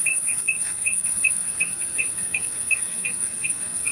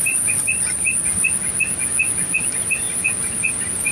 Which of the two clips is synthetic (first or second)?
first